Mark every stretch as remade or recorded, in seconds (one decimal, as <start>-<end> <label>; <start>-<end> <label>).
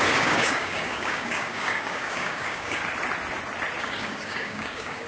0.0-2.8 remade; 2.8-3.8 recorded; 3.8-5.1 remade